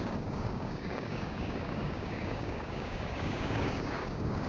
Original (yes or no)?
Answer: no